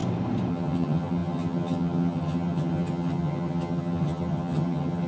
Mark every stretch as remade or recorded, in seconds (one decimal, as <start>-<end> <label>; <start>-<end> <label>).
0.0-0.5 recorded; 0.5-5.1 remade

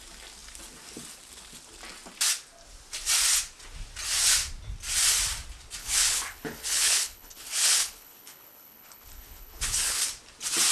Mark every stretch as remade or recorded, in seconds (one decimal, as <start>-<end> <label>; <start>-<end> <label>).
0.0-5.8 recorded; 5.8-10.0 remade; 10.0-10.7 recorded

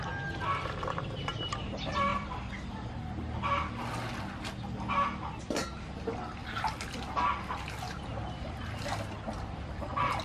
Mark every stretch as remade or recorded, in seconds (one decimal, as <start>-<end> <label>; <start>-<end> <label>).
0.0-10.2 recorded

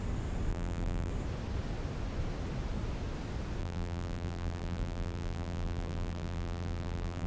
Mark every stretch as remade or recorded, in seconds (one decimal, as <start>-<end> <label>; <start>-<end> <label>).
0.0-0.5 recorded; 0.5-1.1 remade; 1.1-3.6 recorded; 3.6-7.3 remade

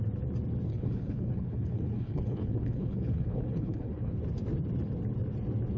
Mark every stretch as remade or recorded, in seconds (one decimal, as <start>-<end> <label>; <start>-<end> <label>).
0.0-0.7 recorded; 0.7-4.2 remade; 4.2-5.8 recorded

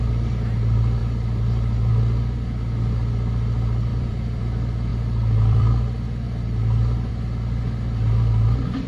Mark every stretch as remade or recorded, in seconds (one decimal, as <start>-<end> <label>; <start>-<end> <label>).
0.0-1.0 recorded; 1.0-1.9 remade; 1.9-3.9 recorded; 3.9-4.4 remade; 4.4-4.9 recorded; 4.9-7.1 remade; 7.1-8.9 recorded

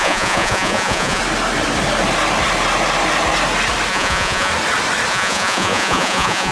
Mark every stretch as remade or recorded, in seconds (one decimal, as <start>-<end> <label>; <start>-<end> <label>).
0.0-1.2 remade; 1.2-3.9 recorded; 3.9-4.5 remade; 4.5-5.1 recorded; 5.1-6.5 remade